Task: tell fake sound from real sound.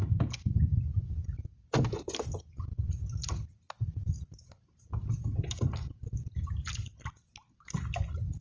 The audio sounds real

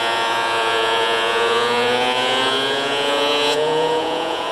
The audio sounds fake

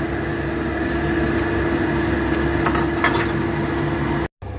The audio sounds real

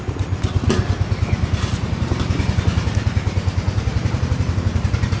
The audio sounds real